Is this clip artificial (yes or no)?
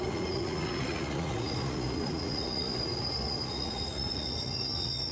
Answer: yes